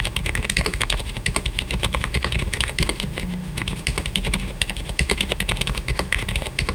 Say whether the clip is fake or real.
fake